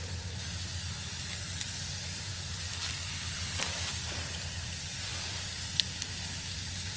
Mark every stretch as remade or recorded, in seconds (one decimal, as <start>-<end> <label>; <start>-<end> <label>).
0.0-7.0 recorded